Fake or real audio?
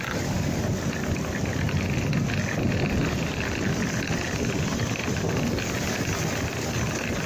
real